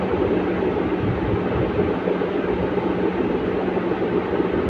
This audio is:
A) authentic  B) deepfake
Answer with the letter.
A